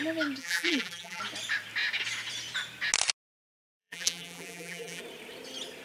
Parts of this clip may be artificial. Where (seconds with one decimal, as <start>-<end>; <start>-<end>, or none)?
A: 0.4-1.2; 3.8-5.0